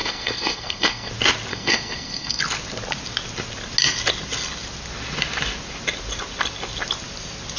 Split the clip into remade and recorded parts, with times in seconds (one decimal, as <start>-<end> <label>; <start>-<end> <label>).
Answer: 0.0-1.1 remade; 1.1-1.5 recorded; 1.5-2.4 remade; 2.4-7.6 recorded